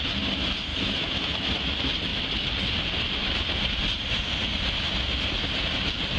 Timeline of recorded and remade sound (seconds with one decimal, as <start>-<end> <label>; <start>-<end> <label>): 0.0-0.7 recorded; 0.7-1.7 remade; 1.7-6.2 recorded